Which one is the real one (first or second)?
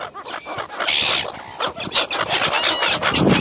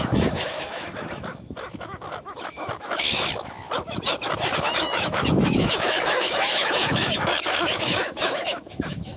first